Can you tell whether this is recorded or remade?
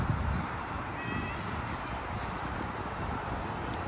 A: recorded